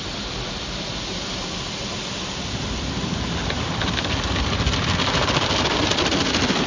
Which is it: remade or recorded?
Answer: recorded